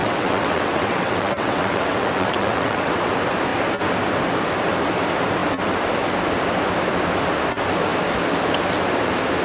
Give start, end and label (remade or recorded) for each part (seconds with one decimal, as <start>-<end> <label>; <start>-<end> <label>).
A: 0.0-3.0 remade; 3.0-9.4 recorded